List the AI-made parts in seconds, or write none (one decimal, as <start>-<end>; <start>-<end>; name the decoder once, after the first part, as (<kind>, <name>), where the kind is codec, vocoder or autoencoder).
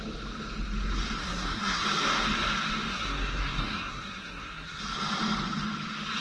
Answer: 1.2-1.8 (codec, SNAC); 2.9-4.8